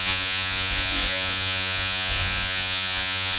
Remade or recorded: remade